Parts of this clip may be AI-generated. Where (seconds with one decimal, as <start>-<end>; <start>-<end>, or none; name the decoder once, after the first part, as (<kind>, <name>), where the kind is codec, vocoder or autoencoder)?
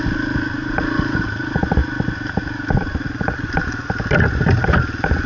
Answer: none